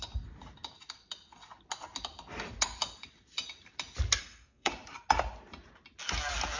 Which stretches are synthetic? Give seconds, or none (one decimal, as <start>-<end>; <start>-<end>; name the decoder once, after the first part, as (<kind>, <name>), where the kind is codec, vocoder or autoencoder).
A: 4.2-4.7 (codec, SNAC)